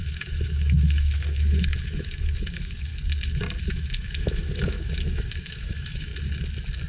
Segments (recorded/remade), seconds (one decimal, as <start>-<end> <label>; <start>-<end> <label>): 0.0-2.9 remade; 2.9-3.6 recorded; 3.6-6.1 remade; 6.1-6.9 recorded